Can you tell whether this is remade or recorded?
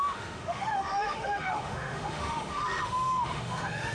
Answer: remade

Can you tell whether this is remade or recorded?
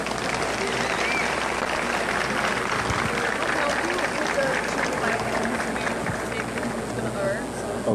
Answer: recorded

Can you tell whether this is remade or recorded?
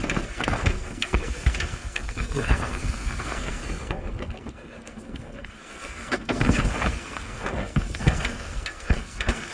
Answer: remade